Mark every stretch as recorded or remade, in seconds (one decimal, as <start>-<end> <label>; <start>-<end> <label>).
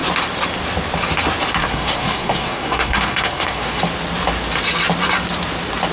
0.0-1.6 recorded; 1.6-3.8 remade; 3.8-5.9 recorded